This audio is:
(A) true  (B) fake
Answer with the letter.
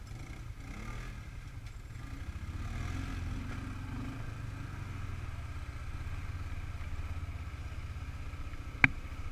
A